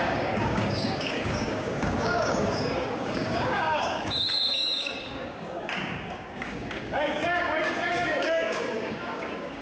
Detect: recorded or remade remade